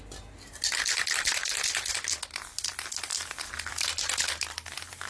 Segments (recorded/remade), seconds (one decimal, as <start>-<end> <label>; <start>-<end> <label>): 0.0-5.1 recorded